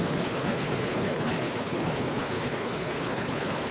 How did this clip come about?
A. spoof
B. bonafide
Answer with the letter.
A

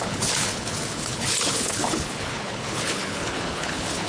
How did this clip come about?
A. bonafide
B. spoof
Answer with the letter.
B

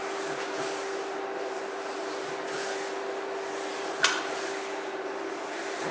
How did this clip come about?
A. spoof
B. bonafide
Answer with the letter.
B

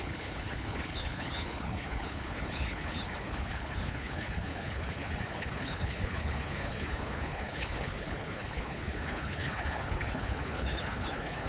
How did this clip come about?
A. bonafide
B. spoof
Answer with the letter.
B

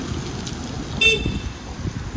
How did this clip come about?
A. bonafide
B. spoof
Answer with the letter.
A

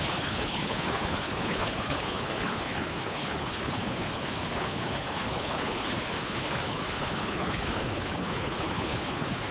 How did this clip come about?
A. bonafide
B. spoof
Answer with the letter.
B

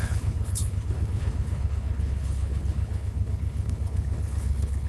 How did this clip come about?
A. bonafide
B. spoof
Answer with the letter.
B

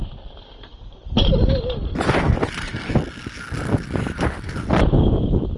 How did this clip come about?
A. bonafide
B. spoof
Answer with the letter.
A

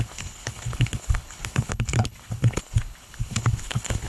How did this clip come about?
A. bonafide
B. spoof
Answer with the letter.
B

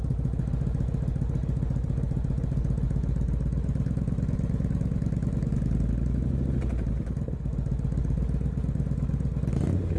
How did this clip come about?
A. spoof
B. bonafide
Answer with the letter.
B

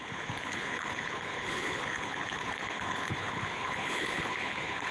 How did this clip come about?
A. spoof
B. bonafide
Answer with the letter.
A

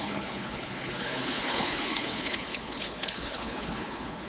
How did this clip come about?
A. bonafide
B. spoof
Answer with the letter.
B